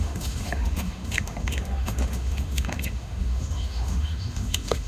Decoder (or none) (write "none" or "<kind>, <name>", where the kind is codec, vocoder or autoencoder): autoencoder, DAC-VAE